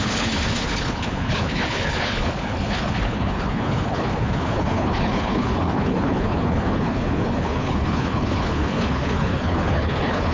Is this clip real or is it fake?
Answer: fake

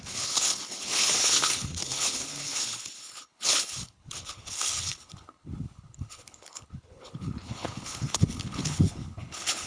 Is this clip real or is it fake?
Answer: fake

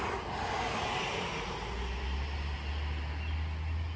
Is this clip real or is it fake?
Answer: real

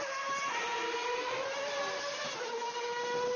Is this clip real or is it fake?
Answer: real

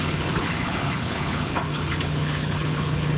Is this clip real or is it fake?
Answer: fake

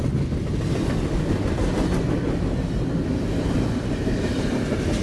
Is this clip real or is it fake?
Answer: real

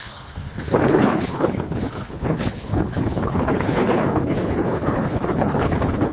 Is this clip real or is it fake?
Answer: fake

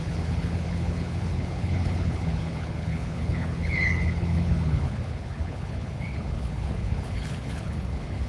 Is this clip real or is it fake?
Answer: fake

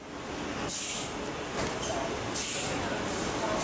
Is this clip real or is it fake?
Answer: real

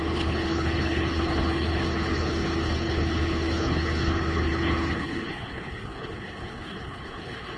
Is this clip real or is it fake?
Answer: fake